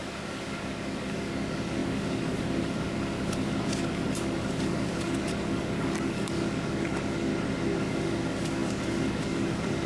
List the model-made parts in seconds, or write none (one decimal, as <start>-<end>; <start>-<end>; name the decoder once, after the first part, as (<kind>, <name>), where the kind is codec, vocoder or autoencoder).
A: 0.0-7.3 (codec, DAC); 7.8-9.9